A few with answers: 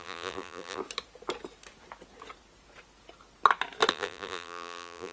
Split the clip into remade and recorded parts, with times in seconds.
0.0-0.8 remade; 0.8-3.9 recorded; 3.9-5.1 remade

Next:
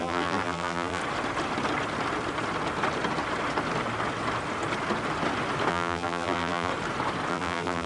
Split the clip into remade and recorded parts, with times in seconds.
0.0-1.0 remade; 1.0-5.7 recorded; 5.7-6.7 remade; 6.7-7.3 recorded; 7.3-7.9 remade

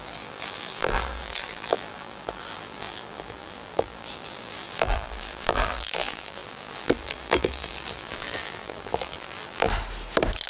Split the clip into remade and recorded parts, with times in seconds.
0.0-9.7 remade; 9.7-10.5 recorded

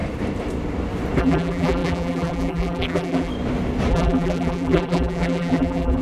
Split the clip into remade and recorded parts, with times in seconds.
0.0-1.2 recorded; 1.2-3.3 remade; 3.3-3.9 recorded; 3.9-6.0 remade

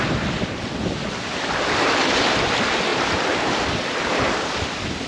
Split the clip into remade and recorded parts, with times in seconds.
0.0-2.9 recorded; 2.9-4.1 remade; 4.1-5.1 recorded

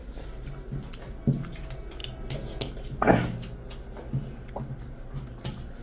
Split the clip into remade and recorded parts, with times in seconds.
0.0-5.8 recorded

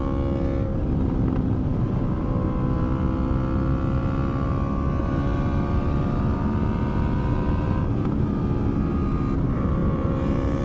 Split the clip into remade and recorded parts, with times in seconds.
0.0-5.0 recorded; 5.0-8.4 remade; 8.4-9.8 recorded; 9.8-10.6 remade